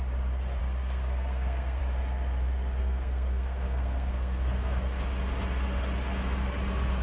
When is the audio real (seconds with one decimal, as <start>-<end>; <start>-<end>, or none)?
0.0-0.6; 1.8-2.8; 5.0-7.0